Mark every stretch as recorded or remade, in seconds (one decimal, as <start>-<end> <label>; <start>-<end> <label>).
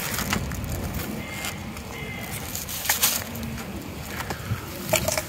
0.0-5.3 recorded